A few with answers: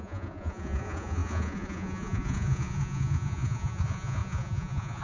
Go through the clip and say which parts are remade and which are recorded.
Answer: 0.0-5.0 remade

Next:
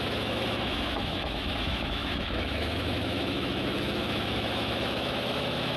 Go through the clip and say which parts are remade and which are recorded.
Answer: 0.0-5.8 remade

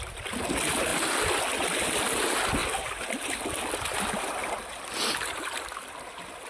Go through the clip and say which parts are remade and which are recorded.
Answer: 0.0-6.5 recorded

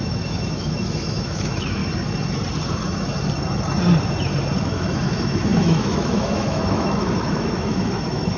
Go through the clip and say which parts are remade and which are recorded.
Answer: 0.0-1.8 remade; 1.8-2.7 recorded; 2.7-3.1 remade; 3.1-4.6 recorded; 4.6-8.4 remade

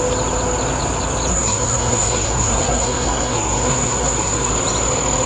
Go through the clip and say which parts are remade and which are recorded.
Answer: 0.0-1.3 recorded; 1.3-4.5 remade; 4.5-5.3 recorded

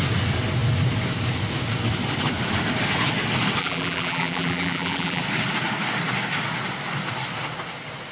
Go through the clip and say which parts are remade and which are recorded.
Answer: 0.0-3.6 recorded; 3.6-5.2 remade; 5.2-8.1 recorded

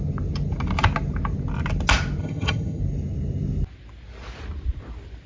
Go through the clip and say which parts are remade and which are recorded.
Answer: 0.0-2.2 recorded; 2.2-2.8 remade; 2.8-5.3 recorded